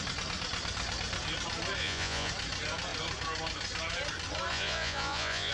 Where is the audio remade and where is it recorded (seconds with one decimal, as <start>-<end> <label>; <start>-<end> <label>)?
0.0-1.8 recorded; 1.8-2.3 remade; 2.3-4.5 recorded; 4.5-5.5 remade